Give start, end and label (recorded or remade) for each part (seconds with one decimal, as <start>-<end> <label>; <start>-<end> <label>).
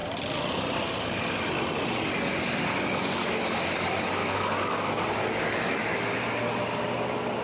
0.0-4.2 recorded; 4.2-5.8 remade; 5.8-7.4 recorded